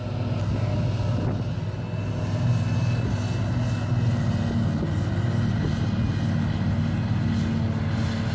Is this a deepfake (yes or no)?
no